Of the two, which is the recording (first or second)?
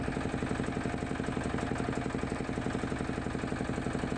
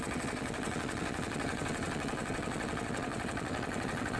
first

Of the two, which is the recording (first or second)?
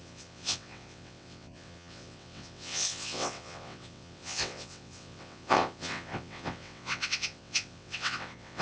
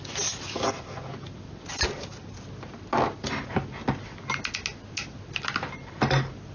second